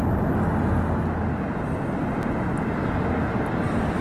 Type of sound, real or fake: real